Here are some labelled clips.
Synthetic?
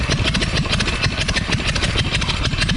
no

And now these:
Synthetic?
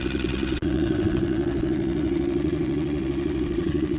yes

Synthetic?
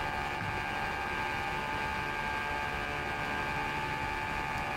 no